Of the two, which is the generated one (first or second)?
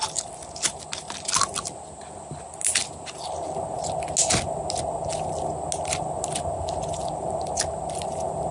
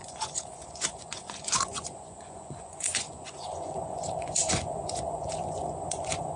second